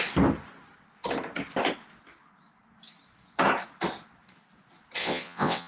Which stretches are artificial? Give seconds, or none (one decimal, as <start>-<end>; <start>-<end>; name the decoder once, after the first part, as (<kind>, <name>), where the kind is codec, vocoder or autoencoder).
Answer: 5.0-5.7 (vocoder, WaveNeXt)